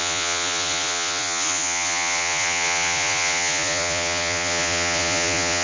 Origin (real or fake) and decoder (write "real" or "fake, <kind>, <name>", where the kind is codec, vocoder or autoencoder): fake, vocoder, Vocos